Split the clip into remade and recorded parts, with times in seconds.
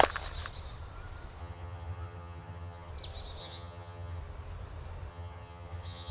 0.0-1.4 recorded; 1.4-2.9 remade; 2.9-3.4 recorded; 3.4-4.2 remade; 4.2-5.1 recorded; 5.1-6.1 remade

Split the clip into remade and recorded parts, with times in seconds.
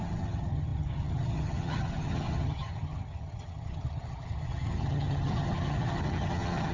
0.0-6.7 remade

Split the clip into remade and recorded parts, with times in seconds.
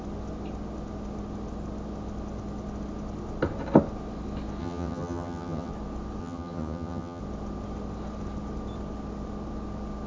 0.0-4.6 recorded; 4.6-5.7 remade; 5.7-6.2 recorded; 6.2-7.2 remade; 7.2-10.1 recorded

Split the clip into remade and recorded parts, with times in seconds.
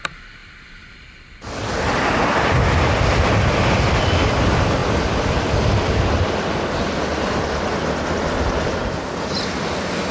0.0-10.1 recorded